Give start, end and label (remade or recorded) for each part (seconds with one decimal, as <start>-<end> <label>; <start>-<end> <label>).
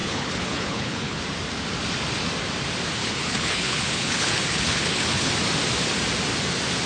0.0-1.2 remade; 1.2-3.0 recorded; 3.0-5.3 remade; 5.3-6.9 recorded